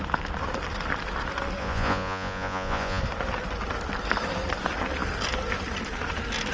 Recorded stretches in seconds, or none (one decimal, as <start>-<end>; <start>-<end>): 0.0-1.6; 3.0-6.5